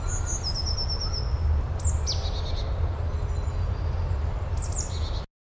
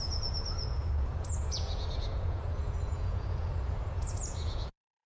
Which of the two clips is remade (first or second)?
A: second